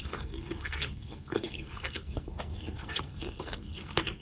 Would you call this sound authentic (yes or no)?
no